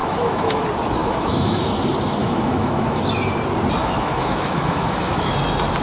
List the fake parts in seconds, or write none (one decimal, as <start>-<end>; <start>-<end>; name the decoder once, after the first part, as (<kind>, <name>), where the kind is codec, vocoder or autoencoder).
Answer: 0.0-0.6 (autoencoder, DAC-VAE); 1.0-1.7; 2.2-3.0; 3.8-5.3

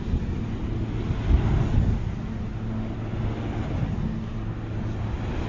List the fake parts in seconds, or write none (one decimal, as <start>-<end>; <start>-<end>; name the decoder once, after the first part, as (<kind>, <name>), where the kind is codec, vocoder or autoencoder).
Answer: none

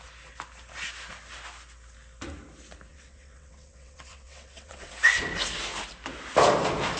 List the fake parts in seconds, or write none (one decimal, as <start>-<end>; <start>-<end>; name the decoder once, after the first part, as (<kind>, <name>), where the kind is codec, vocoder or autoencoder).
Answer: 2.9-4.9 (vocoder, WaveNeXt)